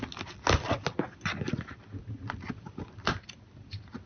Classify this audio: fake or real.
real